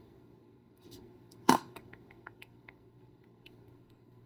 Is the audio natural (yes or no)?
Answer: no